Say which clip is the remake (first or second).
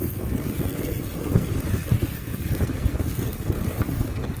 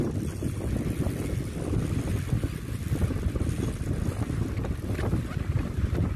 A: first